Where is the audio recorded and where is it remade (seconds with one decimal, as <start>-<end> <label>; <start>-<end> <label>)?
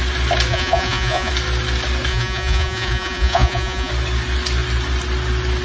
0.0-0.5 recorded; 0.5-1.3 remade; 1.3-2.1 recorded; 2.1-3.9 remade; 3.9-5.6 recorded